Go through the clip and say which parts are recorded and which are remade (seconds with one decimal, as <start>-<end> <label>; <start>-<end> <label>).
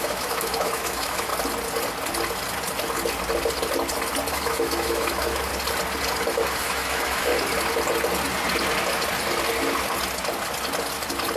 0.0-1.3 remade; 1.3-4.3 recorded; 4.3-5.5 remade; 5.5-6.3 recorded; 6.3-7.3 remade; 7.3-11.4 recorded